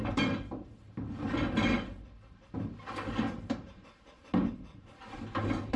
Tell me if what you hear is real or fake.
real